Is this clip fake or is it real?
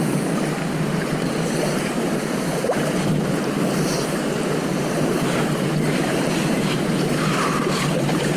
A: fake